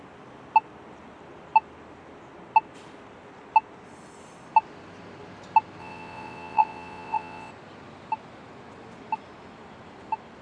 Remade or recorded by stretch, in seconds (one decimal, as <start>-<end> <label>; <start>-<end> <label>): 0.0-5.8 recorded; 5.8-7.5 remade; 7.5-10.4 recorded